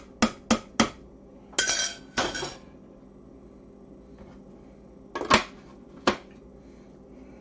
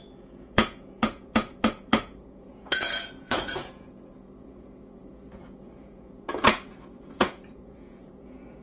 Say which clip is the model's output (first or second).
second